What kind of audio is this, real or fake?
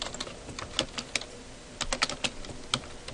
real